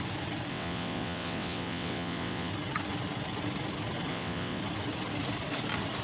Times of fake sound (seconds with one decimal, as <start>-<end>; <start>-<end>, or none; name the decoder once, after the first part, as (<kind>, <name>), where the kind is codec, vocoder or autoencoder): 0.5-2.5 (vocoder, WaveNeXt); 4.1-4.6